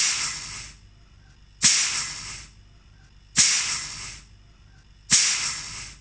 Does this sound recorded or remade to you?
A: recorded